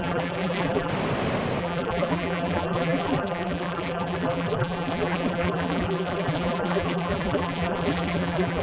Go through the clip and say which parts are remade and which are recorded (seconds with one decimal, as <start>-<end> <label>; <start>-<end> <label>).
0.0-0.9 remade; 0.9-1.6 recorded; 1.6-8.6 remade